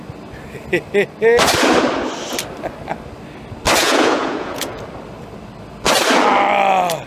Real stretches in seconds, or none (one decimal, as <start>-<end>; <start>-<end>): 0.0-3.8; 4.8-7.1